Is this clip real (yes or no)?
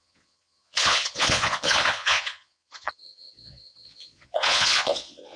no